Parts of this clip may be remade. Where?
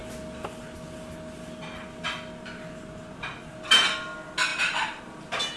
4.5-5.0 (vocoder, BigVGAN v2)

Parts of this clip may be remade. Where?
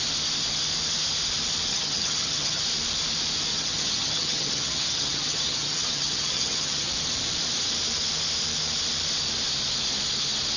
1.7-2.6 (vocoder, HiFi-GAN); 3.5-6.9